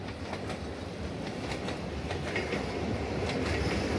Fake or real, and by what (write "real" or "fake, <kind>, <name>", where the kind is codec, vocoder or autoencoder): real